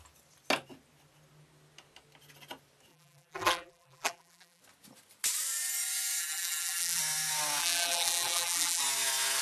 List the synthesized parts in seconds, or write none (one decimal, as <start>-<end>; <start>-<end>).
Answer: 2.9-4.6; 6.2-7.0; 7.6-8.8